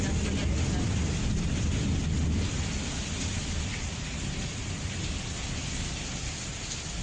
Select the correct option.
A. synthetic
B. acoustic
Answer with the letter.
B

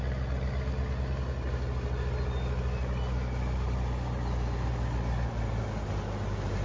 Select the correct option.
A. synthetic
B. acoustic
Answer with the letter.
B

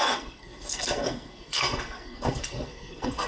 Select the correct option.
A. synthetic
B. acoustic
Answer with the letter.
A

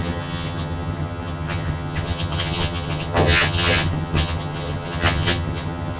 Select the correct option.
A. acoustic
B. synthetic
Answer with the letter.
B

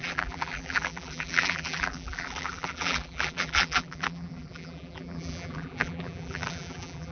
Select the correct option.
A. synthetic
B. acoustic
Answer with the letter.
A